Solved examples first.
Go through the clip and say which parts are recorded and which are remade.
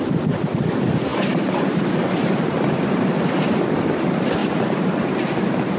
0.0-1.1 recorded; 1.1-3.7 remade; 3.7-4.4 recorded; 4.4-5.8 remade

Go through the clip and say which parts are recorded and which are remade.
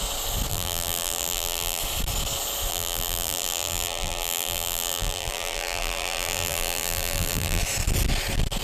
0.0-0.5 recorded; 0.5-1.8 remade; 1.8-2.7 recorded; 2.7-7.6 remade; 7.6-8.6 recorded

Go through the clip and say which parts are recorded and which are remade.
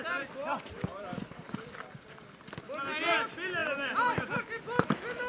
0.0-0.4 recorded; 0.4-2.6 remade; 2.6-3.6 recorded; 3.6-4.5 remade; 4.5-5.3 recorded